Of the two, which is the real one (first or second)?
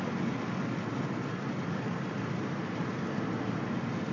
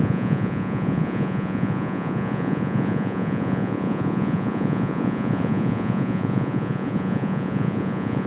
first